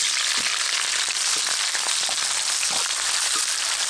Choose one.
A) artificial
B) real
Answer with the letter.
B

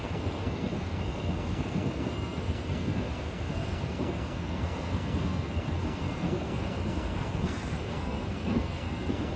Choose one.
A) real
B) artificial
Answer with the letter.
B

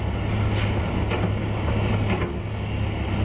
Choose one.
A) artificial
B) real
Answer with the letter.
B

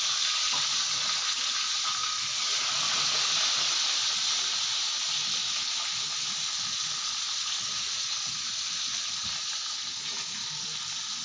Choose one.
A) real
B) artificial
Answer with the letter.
A